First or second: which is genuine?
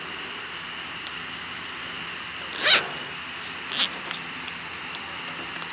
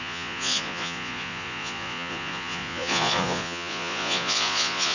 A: first